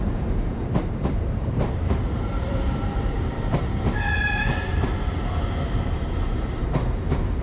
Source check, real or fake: fake